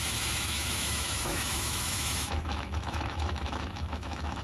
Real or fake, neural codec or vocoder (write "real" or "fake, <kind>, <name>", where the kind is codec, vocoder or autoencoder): fake, autoencoder, DAC-VAE